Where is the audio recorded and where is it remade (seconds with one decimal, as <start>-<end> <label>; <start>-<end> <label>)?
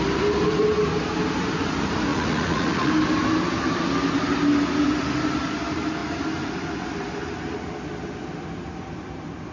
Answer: 0.0-2.1 recorded; 2.1-2.9 remade; 2.9-9.5 recorded